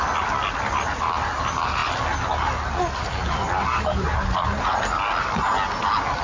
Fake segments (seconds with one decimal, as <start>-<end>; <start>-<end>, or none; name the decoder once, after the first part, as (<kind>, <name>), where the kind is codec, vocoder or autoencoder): none